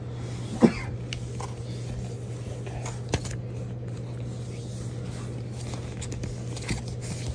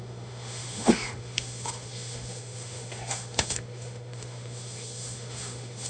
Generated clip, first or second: second